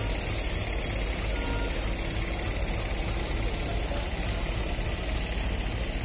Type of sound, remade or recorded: recorded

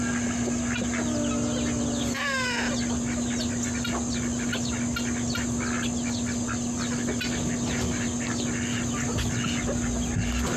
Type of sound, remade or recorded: recorded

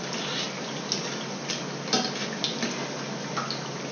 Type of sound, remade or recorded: recorded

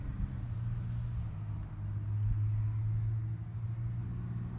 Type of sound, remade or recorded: recorded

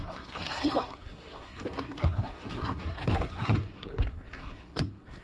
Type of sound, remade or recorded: remade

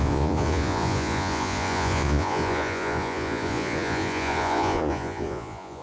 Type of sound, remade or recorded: remade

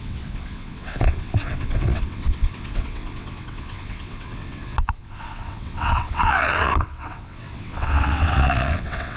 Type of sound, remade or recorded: remade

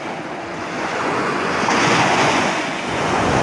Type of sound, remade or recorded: remade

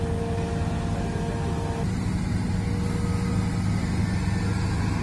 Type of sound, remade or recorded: recorded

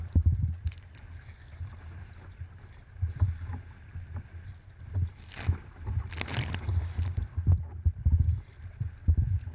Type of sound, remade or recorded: recorded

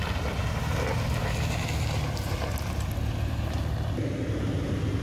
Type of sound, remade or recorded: recorded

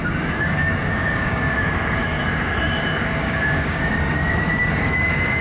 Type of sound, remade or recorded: remade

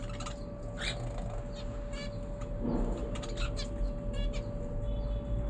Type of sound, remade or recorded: recorded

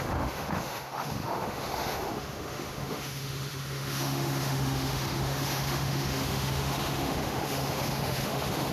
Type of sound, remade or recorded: remade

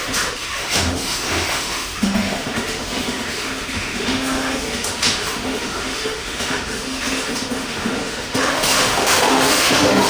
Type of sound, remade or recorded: remade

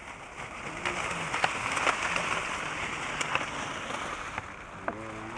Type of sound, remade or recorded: recorded